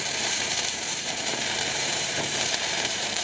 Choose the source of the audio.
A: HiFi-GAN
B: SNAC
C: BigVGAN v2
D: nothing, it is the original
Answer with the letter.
C